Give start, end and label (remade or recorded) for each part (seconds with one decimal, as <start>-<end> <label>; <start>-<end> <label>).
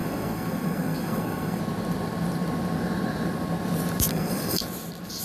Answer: 0.0-1.6 remade; 1.6-4.1 recorded; 4.1-4.6 remade; 4.6-5.2 recorded